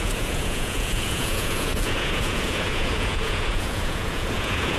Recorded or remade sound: remade